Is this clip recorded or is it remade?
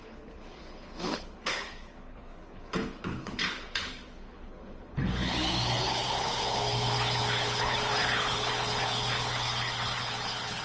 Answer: remade